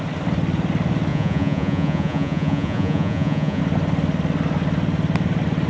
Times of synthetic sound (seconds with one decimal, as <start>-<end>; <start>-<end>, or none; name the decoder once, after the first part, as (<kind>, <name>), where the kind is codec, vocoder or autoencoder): 1.1-3.6 (vocoder, Vocos)